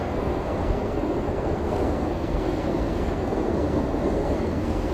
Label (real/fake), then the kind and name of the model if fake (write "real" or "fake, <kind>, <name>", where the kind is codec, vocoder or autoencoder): fake, codec, SNAC